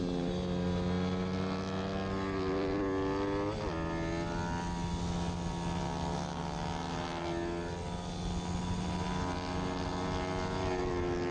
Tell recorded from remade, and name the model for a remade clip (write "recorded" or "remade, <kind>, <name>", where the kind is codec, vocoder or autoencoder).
recorded